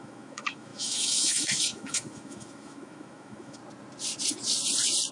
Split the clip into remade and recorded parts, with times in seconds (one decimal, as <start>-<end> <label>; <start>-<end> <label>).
0.0-3.6 remade; 3.6-5.1 recorded